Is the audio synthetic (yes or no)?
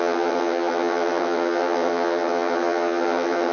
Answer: yes